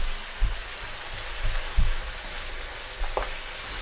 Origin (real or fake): real